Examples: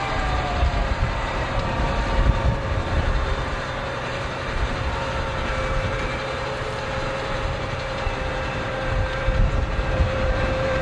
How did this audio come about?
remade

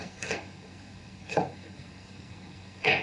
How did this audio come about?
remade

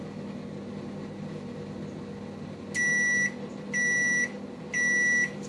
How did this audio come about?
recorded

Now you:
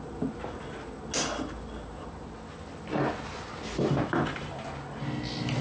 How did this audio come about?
recorded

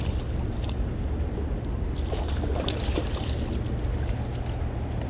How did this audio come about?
recorded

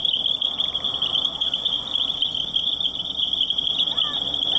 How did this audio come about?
recorded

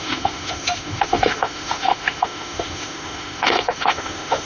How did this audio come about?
remade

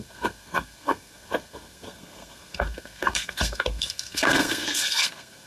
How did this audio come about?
remade